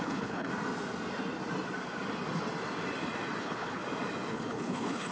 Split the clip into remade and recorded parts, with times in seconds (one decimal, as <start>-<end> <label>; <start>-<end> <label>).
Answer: 0.0-0.5 remade; 0.5-3.4 recorded; 3.4-3.8 remade; 3.8-4.3 recorded; 4.3-5.1 remade